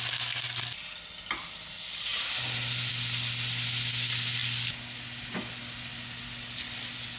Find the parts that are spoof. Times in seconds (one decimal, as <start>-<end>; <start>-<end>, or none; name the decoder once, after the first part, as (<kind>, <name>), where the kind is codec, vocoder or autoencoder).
2.1-2.9 (vocoder, BigVGAN v2)